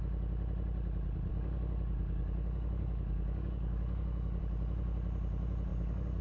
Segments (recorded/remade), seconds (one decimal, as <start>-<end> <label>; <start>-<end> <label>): 0.0-1.3 recorded; 1.3-4.4 remade; 4.4-5.7 recorded; 5.7-6.2 remade